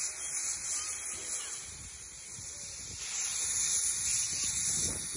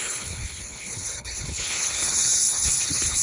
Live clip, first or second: first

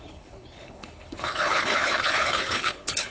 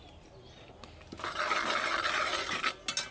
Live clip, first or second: second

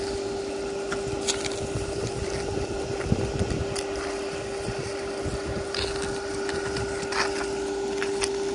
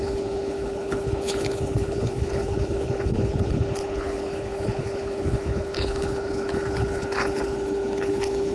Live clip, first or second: first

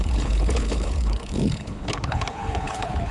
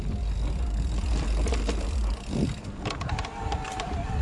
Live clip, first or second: second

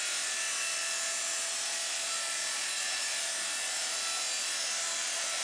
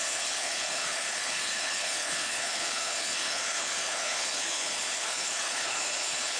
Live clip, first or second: first